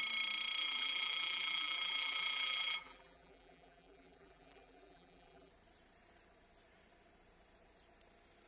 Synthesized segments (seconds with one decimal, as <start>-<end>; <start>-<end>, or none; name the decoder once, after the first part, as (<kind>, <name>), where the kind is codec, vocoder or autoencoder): 0.6-5.5 (vocoder, BigVGAN v2)